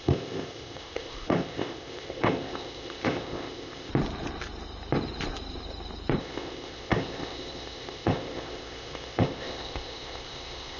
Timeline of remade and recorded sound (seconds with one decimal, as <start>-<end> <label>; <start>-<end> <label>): 0.0-3.9 remade; 3.9-6.2 recorded; 6.2-10.8 remade